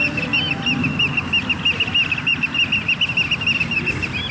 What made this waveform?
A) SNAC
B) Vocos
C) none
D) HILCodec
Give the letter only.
C